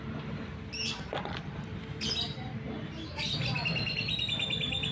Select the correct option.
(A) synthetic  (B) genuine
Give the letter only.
B